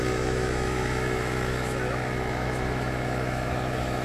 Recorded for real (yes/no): no